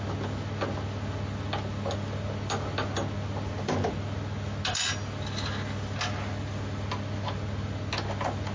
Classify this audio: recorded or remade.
recorded